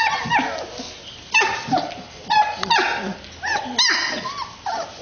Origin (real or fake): real